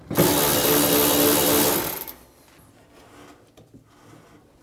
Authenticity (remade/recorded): recorded